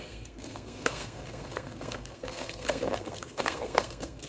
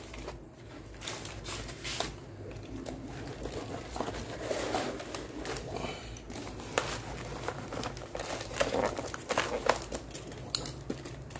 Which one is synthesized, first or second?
first